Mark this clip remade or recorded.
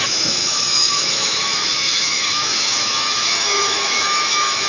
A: remade